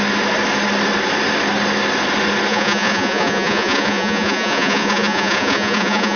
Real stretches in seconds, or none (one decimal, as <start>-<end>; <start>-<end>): 0.0-2.5